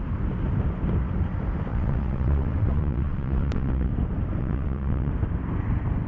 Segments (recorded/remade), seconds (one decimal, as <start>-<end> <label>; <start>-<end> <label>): 0.0-1.7 recorded; 1.7-3.9 remade; 3.9-4.4 recorded; 4.4-5.1 remade; 5.1-6.1 recorded